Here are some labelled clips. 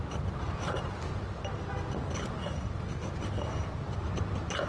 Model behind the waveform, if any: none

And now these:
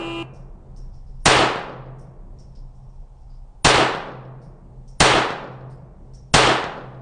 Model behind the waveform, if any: none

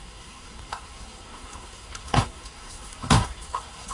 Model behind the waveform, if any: codec, SNAC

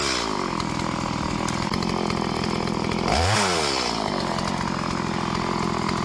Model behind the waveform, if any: none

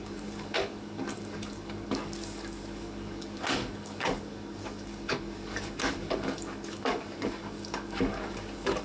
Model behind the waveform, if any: codec, DAC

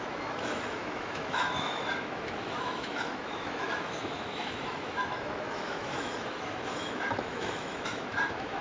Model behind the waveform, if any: autoencoder, DAC-VAE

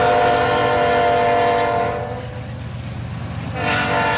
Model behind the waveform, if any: none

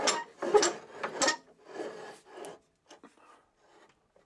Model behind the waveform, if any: none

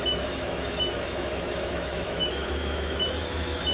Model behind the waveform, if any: autoencoder, DAC-VAE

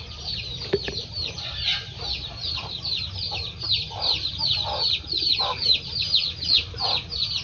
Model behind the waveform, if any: none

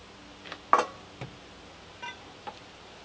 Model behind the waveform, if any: none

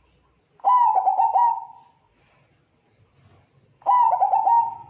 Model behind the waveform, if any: none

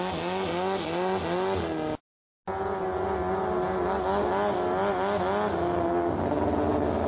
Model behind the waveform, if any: none